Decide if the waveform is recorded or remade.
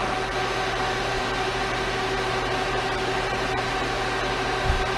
recorded